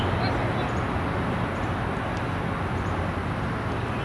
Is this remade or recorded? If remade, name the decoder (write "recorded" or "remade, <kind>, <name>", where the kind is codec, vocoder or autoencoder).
recorded